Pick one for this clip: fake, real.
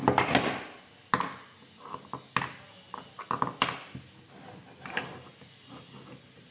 real